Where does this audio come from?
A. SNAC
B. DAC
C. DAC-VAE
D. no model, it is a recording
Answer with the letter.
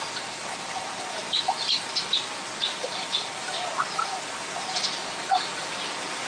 D